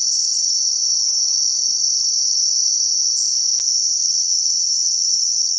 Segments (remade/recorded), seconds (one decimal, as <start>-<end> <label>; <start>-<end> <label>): 0.0-4.0 recorded; 4.0-5.6 remade